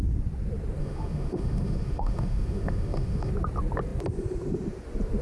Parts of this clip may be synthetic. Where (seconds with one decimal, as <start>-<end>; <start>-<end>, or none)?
0.8-3.3